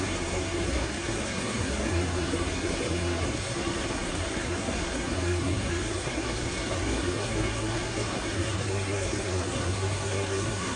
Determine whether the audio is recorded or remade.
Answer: remade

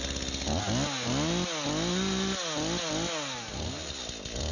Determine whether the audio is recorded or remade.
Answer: recorded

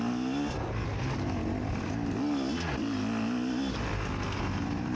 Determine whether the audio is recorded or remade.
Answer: recorded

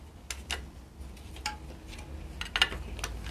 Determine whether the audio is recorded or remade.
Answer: recorded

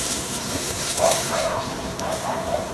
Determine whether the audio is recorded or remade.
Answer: remade